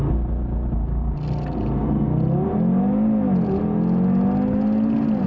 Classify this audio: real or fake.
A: real